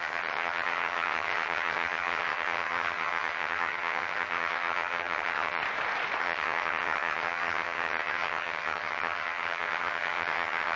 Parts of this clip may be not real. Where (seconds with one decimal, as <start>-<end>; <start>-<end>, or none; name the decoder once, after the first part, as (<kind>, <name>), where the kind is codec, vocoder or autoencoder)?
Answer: 0.0-5.6 (vocoder, HiFi-GAN); 6.2-10.8